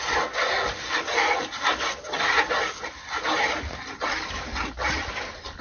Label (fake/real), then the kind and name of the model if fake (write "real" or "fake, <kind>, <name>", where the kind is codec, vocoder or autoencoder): real